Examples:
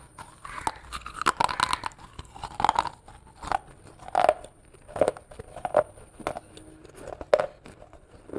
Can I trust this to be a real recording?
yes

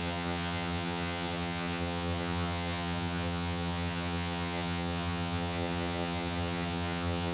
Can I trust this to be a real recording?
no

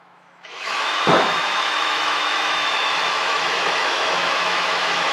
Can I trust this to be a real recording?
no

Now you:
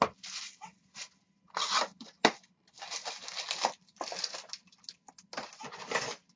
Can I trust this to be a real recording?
yes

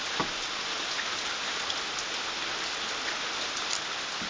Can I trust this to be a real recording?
yes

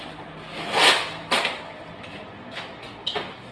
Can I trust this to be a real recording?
yes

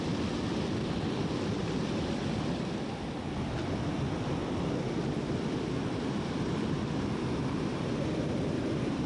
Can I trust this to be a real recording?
yes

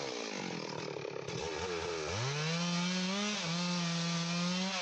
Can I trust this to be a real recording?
yes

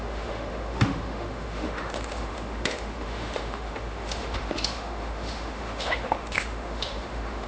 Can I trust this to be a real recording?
no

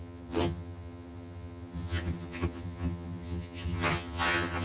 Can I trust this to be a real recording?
no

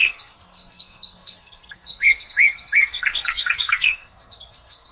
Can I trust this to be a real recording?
no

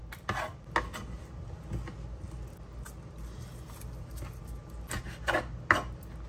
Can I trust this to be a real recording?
yes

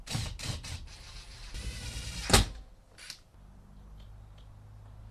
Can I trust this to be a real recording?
yes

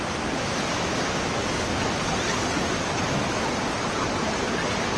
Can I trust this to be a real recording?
yes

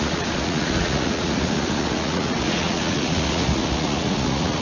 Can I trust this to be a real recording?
no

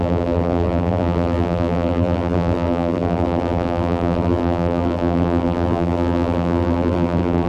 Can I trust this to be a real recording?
no